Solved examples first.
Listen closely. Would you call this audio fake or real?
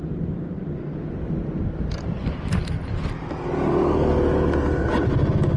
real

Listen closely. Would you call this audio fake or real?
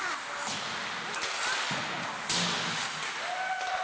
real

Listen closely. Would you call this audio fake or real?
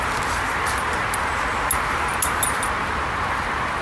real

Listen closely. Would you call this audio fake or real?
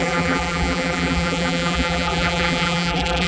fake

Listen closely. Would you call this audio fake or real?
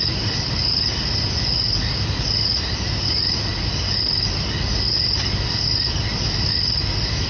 real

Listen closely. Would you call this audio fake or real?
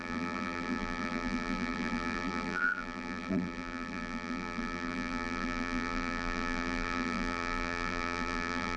fake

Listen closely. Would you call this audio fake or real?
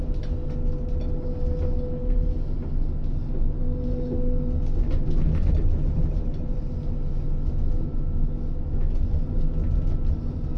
real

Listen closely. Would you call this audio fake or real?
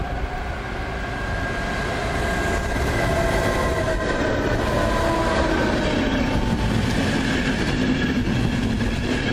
real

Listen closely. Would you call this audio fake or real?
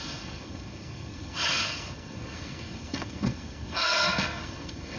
fake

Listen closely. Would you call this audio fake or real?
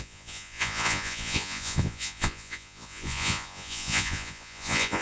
fake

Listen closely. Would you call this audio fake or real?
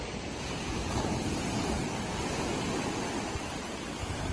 real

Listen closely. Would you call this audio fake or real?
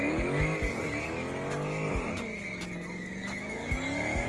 fake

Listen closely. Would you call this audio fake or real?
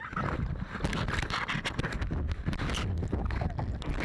real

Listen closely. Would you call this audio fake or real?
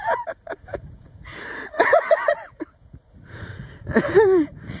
fake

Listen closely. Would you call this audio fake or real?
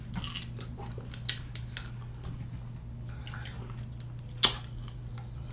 real